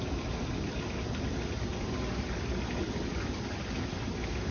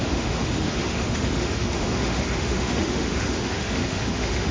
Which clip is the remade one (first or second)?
second